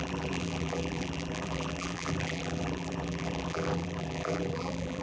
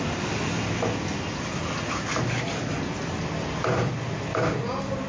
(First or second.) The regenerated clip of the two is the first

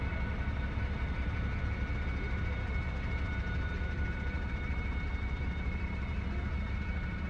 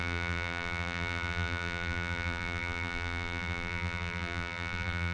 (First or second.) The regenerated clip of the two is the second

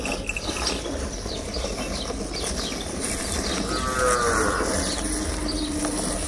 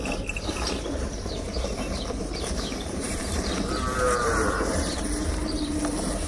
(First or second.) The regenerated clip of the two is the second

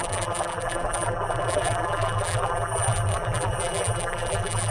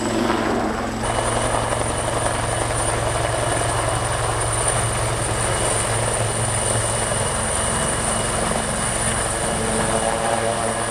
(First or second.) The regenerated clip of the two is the first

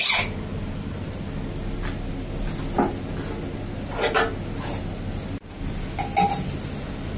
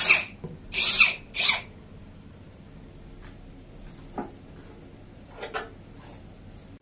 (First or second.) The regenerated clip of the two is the second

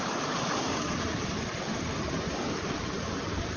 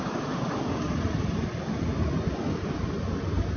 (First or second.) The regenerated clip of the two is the first